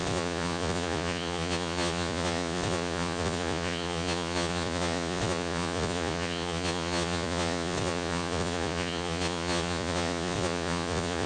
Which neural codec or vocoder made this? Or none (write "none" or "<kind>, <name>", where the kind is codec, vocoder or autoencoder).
vocoder, Vocos